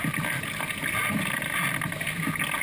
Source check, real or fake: real